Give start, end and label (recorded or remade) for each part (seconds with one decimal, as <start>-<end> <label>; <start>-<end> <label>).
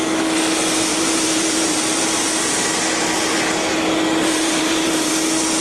0.0-0.9 recorded; 0.9-2.5 remade; 2.5-4.2 recorded; 4.2-5.1 remade; 5.1-5.6 recorded